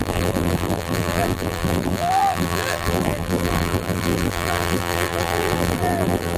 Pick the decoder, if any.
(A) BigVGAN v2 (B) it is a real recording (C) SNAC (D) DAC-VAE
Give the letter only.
A